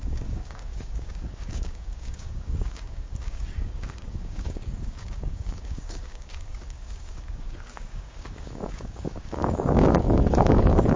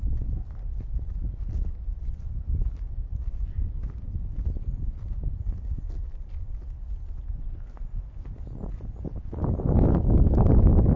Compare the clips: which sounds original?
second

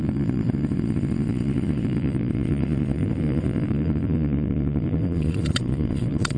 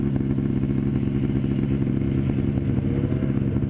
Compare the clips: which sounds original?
second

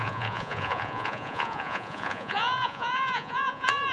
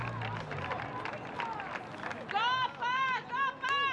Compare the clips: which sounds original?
second